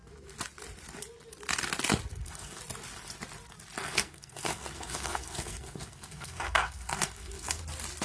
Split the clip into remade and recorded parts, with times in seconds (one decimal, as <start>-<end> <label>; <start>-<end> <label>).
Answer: 0.0-2.1 recorded; 2.1-2.6 remade; 2.6-3.8 recorded; 3.8-7.6 remade; 7.6-8.0 recorded